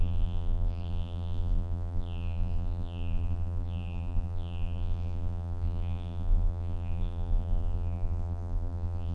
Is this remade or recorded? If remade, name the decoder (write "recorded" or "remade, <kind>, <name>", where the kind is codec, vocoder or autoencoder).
remade, vocoder, BigVGAN v2